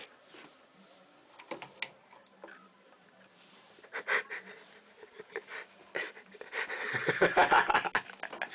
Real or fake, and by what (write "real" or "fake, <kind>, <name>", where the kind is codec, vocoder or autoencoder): real